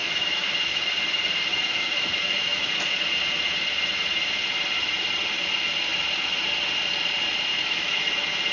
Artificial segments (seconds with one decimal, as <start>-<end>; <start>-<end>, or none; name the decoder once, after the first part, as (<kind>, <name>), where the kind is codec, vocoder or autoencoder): 0.0-0.9 (autoencoder, DAC-VAE); 1.5-3.0; 7.5-8.0